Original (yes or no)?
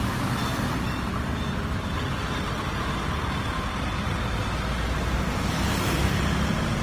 yes